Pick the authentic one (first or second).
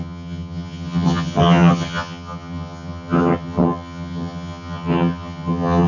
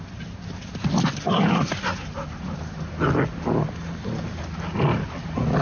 second